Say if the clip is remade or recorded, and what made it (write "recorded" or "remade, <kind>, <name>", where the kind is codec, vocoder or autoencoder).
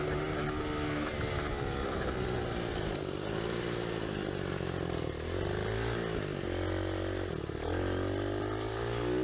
recorded